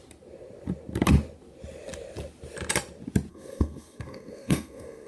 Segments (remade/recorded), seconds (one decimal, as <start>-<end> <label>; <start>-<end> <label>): 0.0-3.3 recorded; 3.3-5.1 remade